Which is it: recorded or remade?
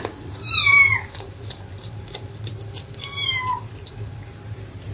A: remade